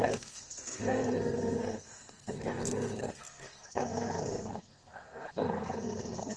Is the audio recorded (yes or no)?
no